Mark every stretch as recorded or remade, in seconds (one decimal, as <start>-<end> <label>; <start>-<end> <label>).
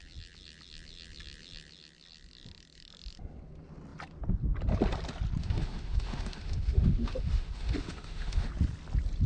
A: 0.0-5.4 recorded; 5.4-8.5 remade; 8.5-9.3 recorded